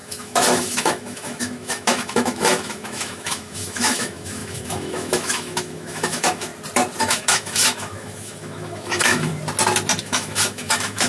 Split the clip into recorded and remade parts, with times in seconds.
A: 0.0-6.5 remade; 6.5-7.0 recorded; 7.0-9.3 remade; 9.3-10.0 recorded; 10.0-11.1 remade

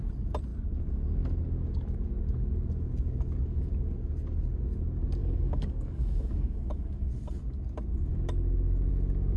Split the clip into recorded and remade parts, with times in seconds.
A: 0.0-5.2 recorded; 5.2-7.1 remade; 7.1-9.4 recorded

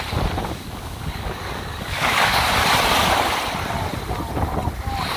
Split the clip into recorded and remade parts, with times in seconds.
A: 0.0-0.4 recorded; 0.4-2.4 remade; 2.4-5.2 recorded

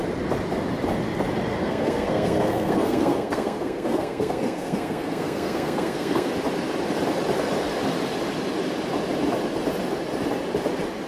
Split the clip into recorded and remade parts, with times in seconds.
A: 0.0-1.6 recorded; 1.6-6.3 remade; 6.3-11.1 recorded

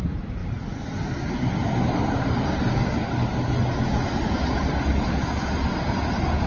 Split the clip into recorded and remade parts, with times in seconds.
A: 0.0-6.5 recorded